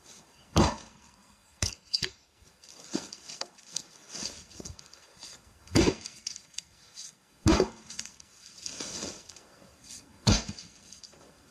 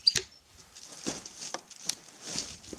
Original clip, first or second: second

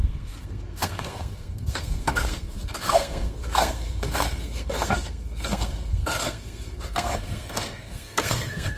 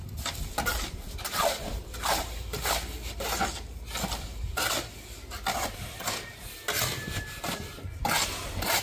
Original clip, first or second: second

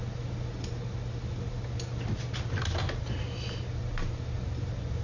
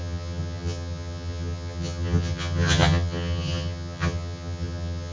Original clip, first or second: first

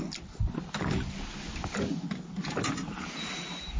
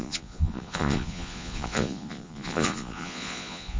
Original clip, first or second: first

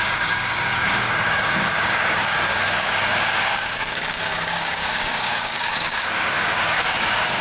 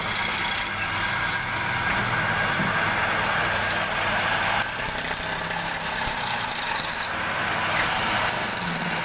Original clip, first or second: second